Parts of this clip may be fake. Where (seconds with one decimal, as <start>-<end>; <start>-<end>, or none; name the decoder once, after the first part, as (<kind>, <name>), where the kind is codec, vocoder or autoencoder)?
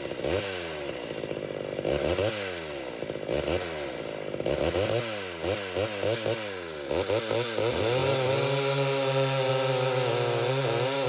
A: none